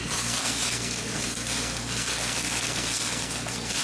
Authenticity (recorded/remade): remade